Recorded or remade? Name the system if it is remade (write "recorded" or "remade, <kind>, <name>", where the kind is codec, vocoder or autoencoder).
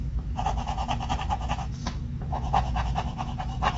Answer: remade, autoencoder, DAC-VAE